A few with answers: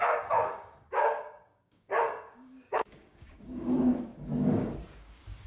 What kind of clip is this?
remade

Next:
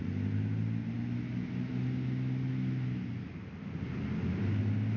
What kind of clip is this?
recorded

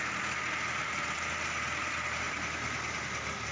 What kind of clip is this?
recorded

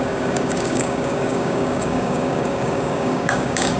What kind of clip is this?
remade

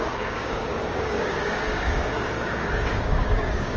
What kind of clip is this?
remade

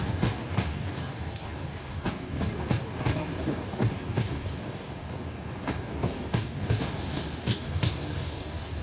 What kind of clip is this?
remade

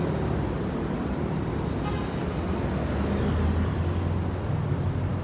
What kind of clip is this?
recorded